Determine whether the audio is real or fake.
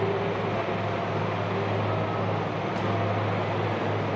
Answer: real